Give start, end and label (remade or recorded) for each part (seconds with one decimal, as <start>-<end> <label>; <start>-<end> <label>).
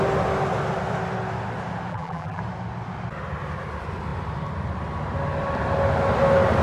0.0-1.9 recorded; 1.9-2.4 remade; 2.4-6.6 recorded